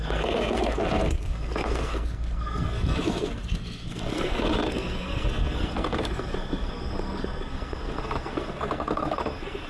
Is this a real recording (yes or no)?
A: no